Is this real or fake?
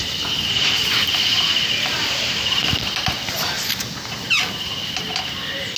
real